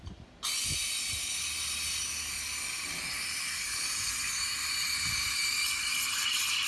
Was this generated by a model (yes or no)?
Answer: no